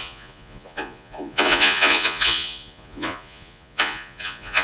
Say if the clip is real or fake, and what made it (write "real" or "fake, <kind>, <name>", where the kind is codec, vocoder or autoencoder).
fake, vocoder, Vocos